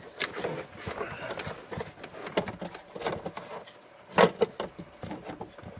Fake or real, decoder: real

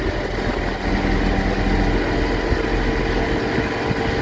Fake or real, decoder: real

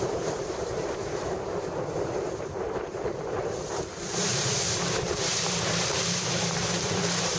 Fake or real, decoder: fake, vocoder, BigVGAN v2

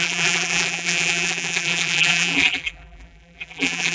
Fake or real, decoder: fake, vocoder, BigVGAN v2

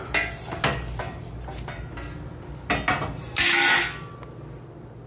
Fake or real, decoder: real